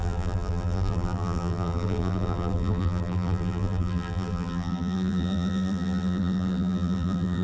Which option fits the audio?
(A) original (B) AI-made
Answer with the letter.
B